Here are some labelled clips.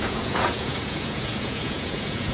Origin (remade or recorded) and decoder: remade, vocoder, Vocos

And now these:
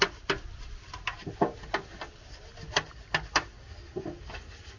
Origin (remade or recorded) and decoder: recorded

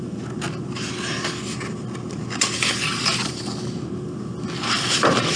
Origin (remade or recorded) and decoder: recorded